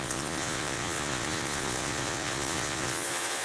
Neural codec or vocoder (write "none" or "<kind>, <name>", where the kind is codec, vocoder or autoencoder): vocoder, Vocos